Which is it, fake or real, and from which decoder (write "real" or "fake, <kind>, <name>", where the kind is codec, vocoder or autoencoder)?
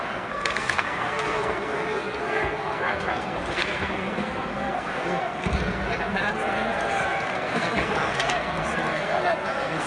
fake, codec, SNAC